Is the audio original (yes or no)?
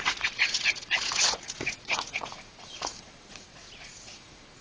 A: no